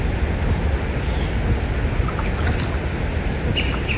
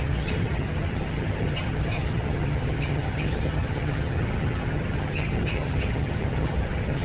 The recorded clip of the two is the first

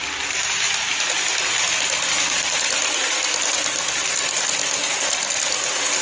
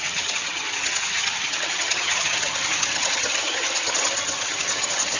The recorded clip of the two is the first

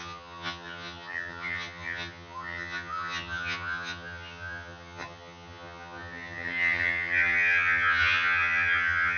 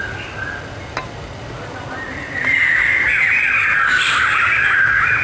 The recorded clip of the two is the second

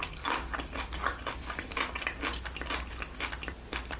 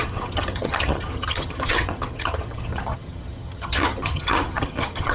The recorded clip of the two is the first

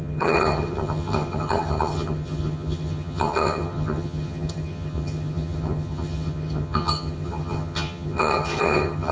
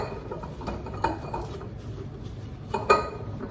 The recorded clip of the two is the second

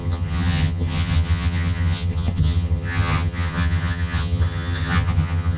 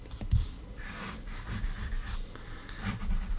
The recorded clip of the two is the second